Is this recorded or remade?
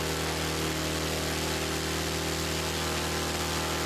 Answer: recorded